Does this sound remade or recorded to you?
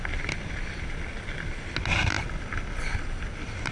recorded